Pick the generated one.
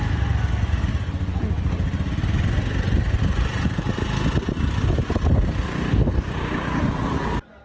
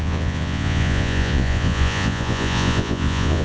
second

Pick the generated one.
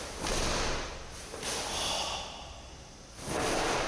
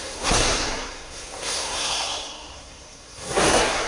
second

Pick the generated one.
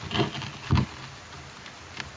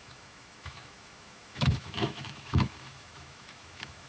second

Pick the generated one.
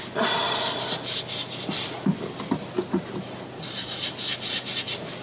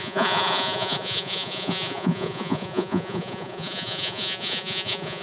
second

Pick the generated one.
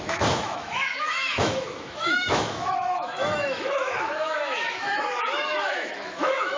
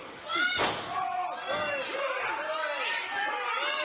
first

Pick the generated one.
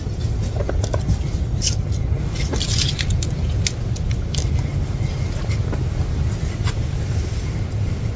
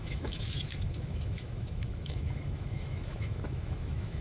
second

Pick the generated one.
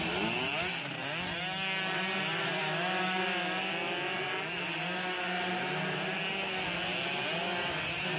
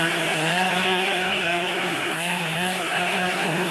second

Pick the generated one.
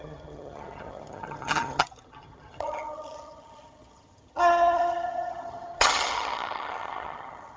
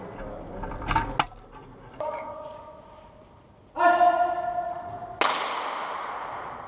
first